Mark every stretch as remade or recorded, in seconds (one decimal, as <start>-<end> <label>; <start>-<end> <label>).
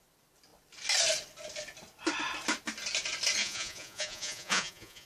0.0-3.4 recorded; 3.4-5.1 remade